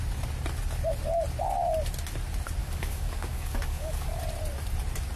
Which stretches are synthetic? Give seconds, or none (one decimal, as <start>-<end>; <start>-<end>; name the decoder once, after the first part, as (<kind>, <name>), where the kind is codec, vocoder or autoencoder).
2.6-4.2 (codec, DAC)